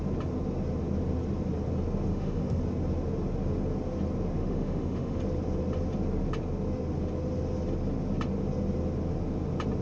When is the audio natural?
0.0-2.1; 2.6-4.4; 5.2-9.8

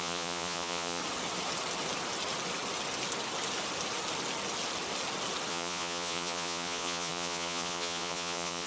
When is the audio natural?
1.0-5.5

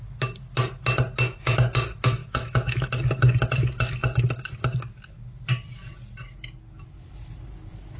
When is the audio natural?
0.0-2.2; 2.9-8.0

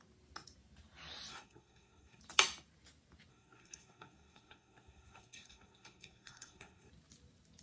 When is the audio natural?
0.0-1.3; 2.2-3.3; 6.9-7.6

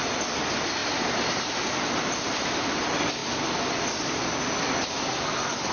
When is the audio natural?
0.0-0.8; 2.8-5.7

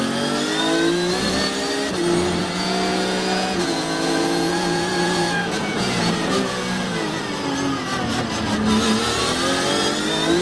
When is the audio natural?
0.0-2.4; 7.2-10.4